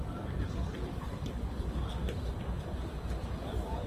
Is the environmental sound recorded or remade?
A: recorded